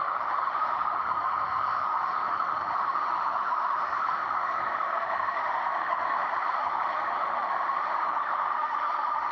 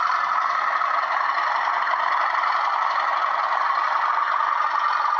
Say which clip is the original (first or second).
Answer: second